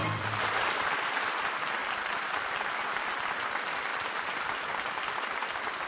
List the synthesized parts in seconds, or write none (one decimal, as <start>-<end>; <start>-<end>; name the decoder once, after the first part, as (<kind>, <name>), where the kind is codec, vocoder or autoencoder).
0.0-1.8 (vocoder, BigVGAN v2); 3.2-3.9; 5.1-5.9